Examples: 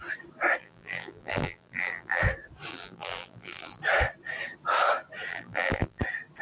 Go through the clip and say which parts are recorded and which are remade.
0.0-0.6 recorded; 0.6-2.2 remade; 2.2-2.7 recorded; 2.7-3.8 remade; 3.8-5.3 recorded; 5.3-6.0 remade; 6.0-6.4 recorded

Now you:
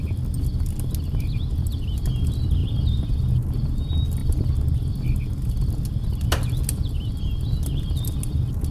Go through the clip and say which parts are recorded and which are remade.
0.0-1.7 recorded; 1.7-2.2 remade; 2.2-8.7 recorded

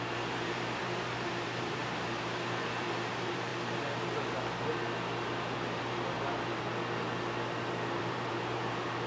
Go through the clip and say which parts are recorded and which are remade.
0.0-3.5 remade; 3.5-8.0 recorded; 8.0-9.1 remade

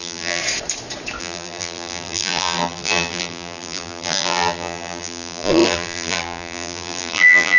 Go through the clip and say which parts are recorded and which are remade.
0.0-0.4 remade; 0.4-1.2 recorded; 1.2-7.6 remade

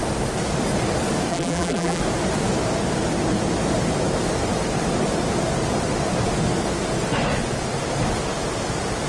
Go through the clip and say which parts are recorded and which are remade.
0.0-1.3 recorded; 1.3-2.0 remade; 2.0-9.1 recorded

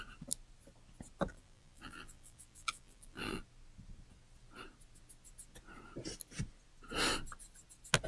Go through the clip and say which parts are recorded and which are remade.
0.0-1.3 recorded; 1.3-3.4 remade; 3.4-8.1 recorded

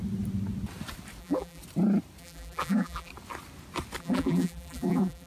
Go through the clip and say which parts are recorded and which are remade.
0.0-1.2 recorded; 1.2-1.6 remade; 1.6-2.2 recorded; 2.2-3.1 remade; 3.1-4.0 recorded; 4.0-5.3 remade

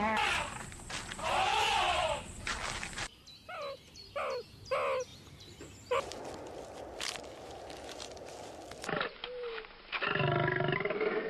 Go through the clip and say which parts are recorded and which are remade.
0.0-5.1 recorded; 5.1-6.2 remade; 6.2-11.3 recorded